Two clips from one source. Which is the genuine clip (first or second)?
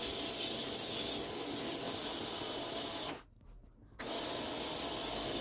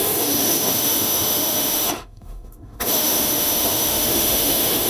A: first